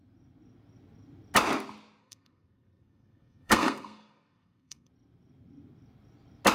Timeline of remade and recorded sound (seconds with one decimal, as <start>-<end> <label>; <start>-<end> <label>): 0.0-2.0 recorded; 2.0-4.9 remade; 4.9-6.5 recorded